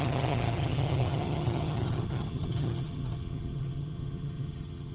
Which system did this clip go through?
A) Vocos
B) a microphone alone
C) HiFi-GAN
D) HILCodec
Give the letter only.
C